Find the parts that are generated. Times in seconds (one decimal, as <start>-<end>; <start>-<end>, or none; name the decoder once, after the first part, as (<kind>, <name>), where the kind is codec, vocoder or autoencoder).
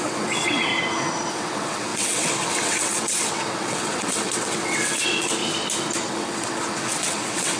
0.0-0.7 (vocoder, WaveNeXt); 1.3-5.4; 6.1-7.6